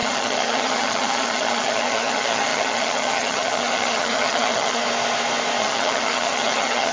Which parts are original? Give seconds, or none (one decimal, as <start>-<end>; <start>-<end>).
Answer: 4.8-5.6